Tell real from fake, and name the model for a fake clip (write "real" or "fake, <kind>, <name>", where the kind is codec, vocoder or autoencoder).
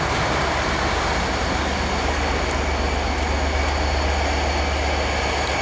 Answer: real